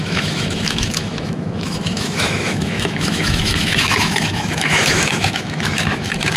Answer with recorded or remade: remade